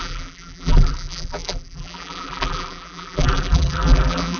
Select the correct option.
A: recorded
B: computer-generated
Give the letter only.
B